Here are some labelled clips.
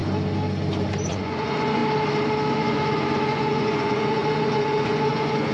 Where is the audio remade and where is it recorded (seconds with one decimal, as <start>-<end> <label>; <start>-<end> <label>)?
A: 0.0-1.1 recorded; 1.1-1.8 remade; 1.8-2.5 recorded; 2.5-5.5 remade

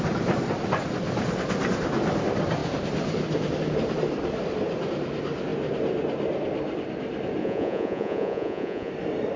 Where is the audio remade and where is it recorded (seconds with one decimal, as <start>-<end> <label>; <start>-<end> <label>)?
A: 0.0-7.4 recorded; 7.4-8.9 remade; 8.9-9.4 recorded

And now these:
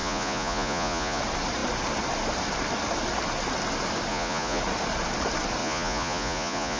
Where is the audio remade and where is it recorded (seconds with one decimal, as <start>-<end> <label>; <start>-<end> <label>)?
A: 0.0-1.2 remade; 1.2-4.1 recorded; 4.1-4.6 remade; 4.6-5.6 recorded; 5.6-6.8 remade

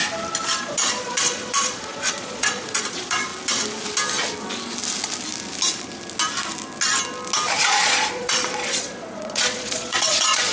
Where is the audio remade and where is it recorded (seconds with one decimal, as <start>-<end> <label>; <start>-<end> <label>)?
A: 0.0-0.6 recorded; 0.6-3.3 remade; 3.3-7.6 recorded; 7.6-10.5 remade